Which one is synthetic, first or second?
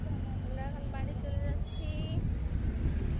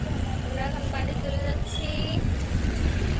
second